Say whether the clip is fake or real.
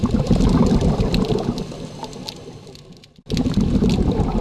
real